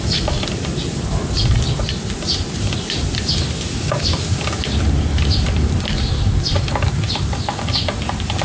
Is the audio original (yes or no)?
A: no